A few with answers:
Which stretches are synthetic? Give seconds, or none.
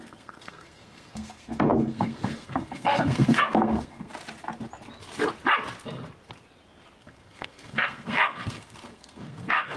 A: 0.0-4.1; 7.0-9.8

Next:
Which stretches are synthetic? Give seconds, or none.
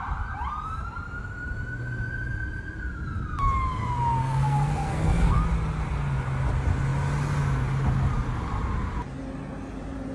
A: 4.2-5.4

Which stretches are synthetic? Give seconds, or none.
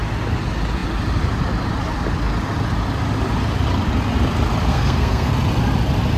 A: 4.7-5.3